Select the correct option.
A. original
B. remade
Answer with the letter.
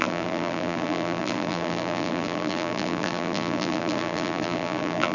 B